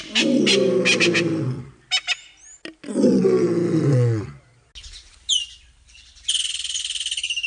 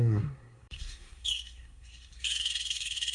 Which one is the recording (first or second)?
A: first